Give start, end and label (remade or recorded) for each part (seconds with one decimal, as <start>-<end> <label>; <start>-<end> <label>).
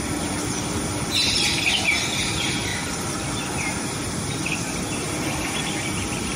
0.0-2.7 recorded; 2.7-3.3 remade; 3.3-6.4 recorded